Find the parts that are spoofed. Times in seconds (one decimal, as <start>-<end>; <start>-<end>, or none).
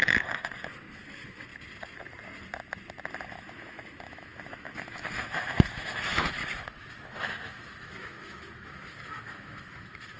0.0-1.5; 3.1-10.2